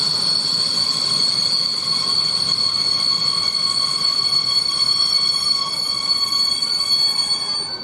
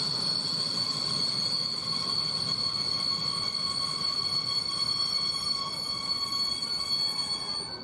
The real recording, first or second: second